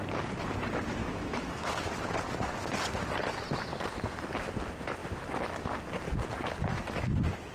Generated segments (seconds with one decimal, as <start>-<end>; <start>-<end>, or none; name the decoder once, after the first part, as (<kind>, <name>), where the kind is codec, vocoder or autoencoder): 1.0-1.9 (autoencoder, DAC-VAE)